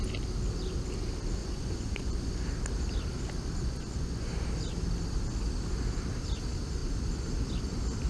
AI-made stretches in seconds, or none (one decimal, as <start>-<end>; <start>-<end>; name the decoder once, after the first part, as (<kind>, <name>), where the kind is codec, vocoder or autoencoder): 1.4-2.3 (vocoder, Vocos); 3.6-4.4